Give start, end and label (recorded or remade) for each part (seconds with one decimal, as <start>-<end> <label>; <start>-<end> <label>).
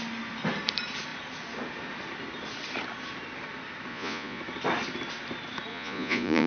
0.0-3.9 recorded; 3.9-4.4 remade; 4.4-5.7 recorded; 5.7-6.5 remade